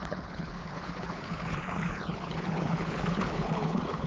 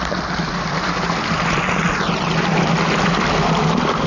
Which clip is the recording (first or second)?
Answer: second